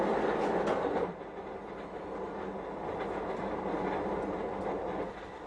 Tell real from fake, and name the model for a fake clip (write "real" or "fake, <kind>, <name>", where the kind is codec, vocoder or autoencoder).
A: real